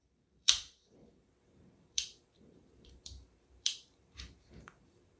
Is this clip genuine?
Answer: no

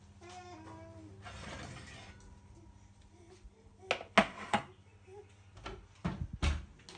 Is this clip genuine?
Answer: yes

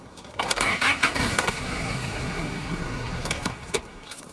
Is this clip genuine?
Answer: no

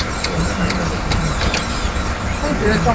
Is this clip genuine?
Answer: yes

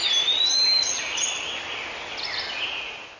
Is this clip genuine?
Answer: yes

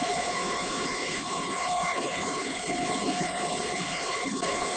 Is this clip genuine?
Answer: no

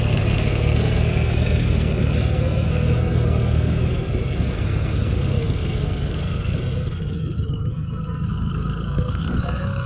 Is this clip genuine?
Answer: no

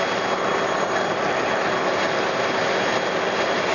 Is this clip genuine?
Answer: yes